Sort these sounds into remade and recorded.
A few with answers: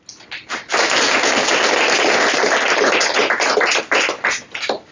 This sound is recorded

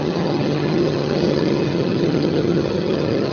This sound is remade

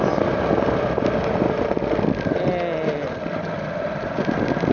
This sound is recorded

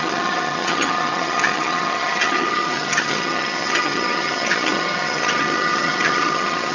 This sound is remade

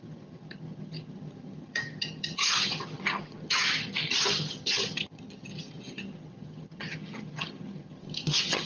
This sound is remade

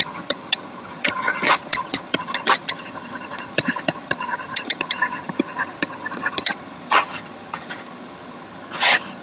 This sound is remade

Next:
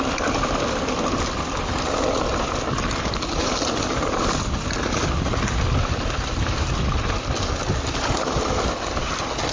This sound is recorded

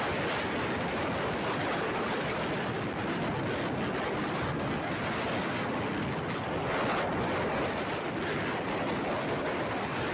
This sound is recorded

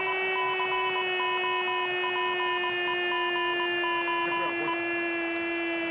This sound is recorded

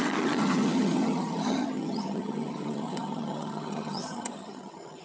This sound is remade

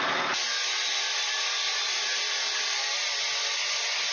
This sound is recorded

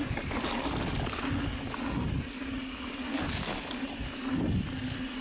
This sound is recorded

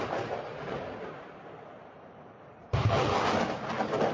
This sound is recorded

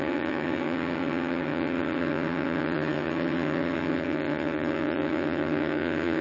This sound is remade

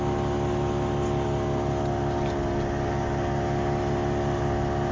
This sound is recorded